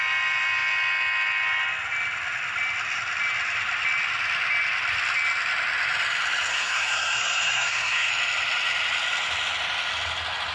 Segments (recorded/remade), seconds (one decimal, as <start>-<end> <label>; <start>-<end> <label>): 0.0-6.5 recorded; 6.5-8.1 remade; 8.1-10.5 recorded